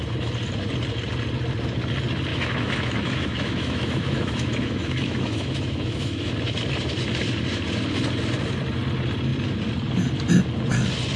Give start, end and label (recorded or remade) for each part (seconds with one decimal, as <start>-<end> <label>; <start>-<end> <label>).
0.0-2.3 recorded; 2.3-6.3 remade; 6.3-11.2 recorded